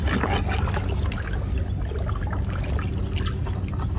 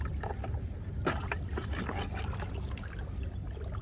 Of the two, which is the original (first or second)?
first